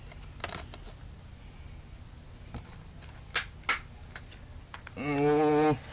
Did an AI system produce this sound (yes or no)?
no